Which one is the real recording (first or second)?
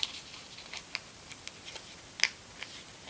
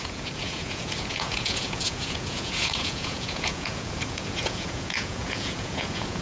first